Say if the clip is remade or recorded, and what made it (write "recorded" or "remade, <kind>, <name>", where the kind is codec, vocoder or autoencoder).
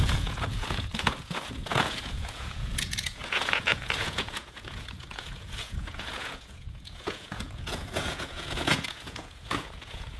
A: remade, vocoder, Vocos